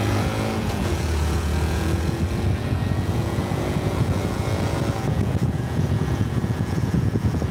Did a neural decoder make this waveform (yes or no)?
yes